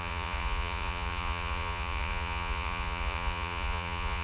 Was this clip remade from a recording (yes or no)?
yes